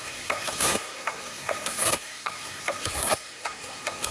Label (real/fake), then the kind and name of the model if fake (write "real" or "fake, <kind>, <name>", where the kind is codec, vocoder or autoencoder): fake, codec, SNAC